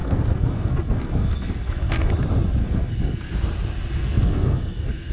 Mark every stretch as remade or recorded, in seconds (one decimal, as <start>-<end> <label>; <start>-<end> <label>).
0.0-2.1 remade; 2.1-2.6 recorded; 2.6-3.3 remade; 3.3-4.0 recorded; 4.0-5.1 remade